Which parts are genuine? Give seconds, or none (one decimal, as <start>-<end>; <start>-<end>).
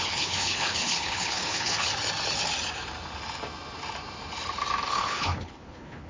1.9-4.9